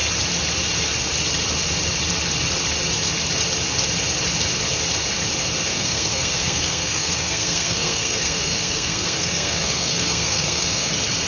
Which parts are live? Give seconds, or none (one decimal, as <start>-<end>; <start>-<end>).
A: 0.0-5.7; 10.9-11.3